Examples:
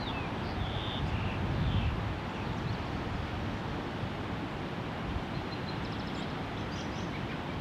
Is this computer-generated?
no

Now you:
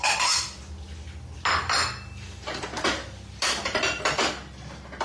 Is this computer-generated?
no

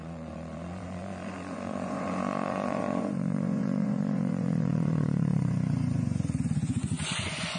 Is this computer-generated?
yes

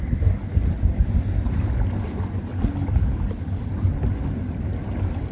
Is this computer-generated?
no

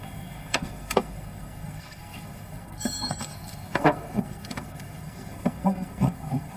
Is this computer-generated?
yes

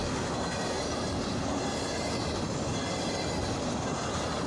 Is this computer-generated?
no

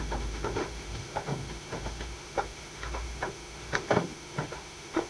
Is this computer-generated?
yes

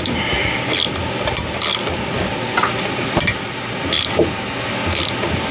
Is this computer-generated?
no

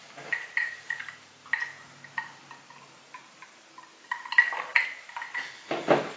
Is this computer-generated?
no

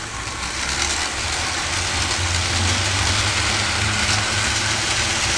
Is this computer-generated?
no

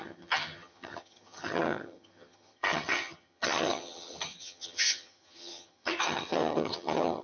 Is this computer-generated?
yes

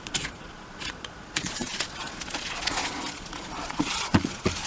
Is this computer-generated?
yes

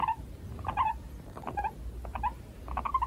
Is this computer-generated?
no